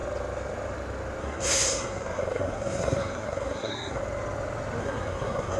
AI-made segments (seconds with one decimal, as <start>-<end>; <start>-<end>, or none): 1.2-4.0; 4.8-5.6